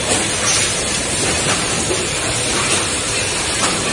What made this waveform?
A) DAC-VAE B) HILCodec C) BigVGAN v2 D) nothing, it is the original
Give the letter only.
C